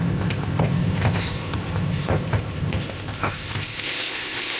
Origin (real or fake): fake